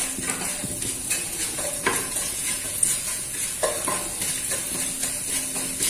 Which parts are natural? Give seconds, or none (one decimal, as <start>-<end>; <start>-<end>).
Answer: 0.0-1.0; 3.3-5.9